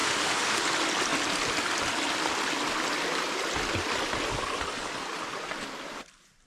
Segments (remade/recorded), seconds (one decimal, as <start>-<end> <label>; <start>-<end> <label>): 0.0-0.6 remade; 0.6-6.5 recorded